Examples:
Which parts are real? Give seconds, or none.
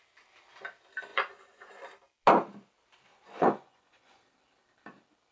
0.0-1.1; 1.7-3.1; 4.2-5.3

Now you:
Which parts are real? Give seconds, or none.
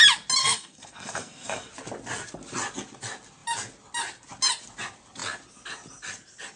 0.0-0.4; 1.7-6.6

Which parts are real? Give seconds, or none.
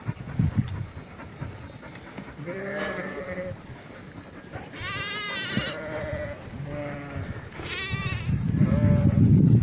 0.0-1.2; 2.1-9.6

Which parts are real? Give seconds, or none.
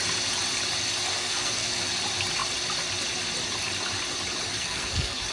0.0-1.1; 1.9-4.5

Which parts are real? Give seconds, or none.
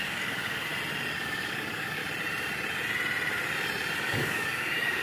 0.7-1.2; 2.0-4.0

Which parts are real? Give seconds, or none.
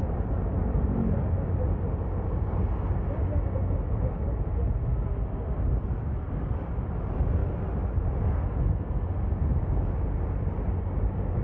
0.0-11.4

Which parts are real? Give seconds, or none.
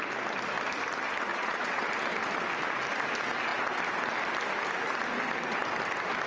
0.0-1.3; 1.8-6.3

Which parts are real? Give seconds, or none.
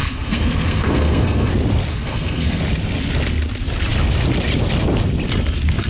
1.5-1.9; 2.6-5.9